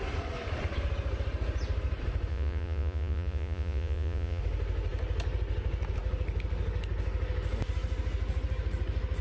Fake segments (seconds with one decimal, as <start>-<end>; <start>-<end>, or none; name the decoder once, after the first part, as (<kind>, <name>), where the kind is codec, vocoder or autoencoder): 2.3-4.4 (vocoder, Vocos)